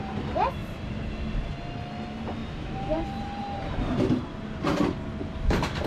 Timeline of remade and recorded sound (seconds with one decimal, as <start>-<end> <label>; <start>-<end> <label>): 0.0-0.6 recorded; 0.6-1.5 remade; 1.5-2.4 recorded; 2.4-4.6 remade; 4.6-5.9 recorded